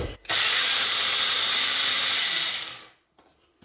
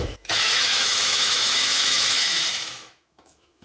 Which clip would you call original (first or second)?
first